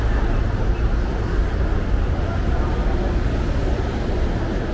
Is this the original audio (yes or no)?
yes